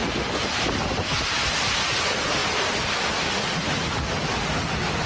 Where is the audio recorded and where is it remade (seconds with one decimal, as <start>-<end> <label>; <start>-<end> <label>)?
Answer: 0.0-5.1 recorded

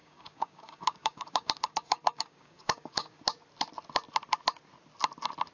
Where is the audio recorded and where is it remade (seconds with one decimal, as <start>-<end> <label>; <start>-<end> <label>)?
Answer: 0.0-3.2 remade; 3.2-5.5 recorded

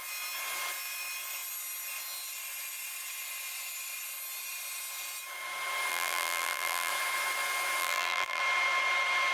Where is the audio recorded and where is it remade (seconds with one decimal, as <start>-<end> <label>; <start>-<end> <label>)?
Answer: 0.0-5.9 recorded; 5.9-6.9 remade; 6.9-7.8 recorded; 7.8-8.4 remade; 8.4-9.3 recorded

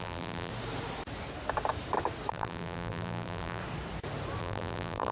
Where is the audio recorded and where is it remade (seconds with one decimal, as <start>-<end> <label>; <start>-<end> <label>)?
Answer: 0.0-0.5 remade; 0.5-2.3 recorded; 2.3-3.6 remade; 3.6-4.4 recorded; 4.4-5.1 remade